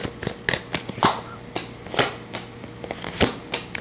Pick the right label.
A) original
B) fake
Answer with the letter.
A